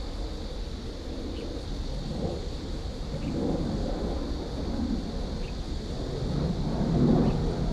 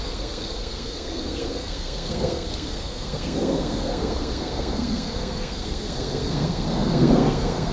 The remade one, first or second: second